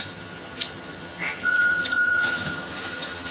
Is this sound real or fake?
fake